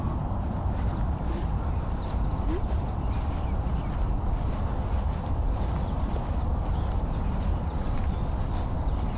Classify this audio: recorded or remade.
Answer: recorded